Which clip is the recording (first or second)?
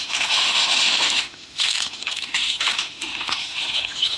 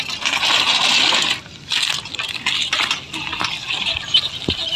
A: second